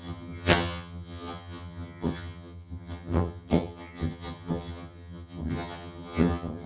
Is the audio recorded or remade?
remade